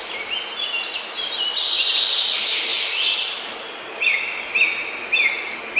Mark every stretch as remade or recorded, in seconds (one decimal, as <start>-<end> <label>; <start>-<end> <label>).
0.0-5.8 recorded